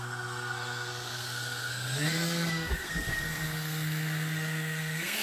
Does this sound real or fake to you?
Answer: fake